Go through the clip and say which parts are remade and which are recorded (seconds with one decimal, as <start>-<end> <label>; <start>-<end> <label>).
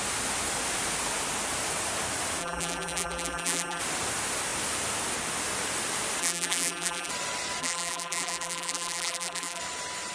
0.0-2.4 recorded; 2.4-3.8 remade; 3.8-6.2 recorded; 6.2-7.1 remade; 7.1-7.6 recorded; 7.6-9.6 remade; 9.6-10.1 recorded